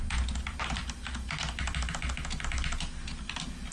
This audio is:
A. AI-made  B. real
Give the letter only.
B